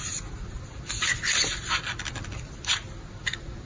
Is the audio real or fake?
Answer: real